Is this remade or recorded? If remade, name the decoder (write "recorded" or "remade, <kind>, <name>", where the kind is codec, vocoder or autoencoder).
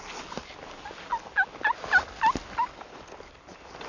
recorded